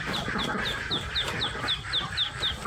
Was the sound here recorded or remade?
recorded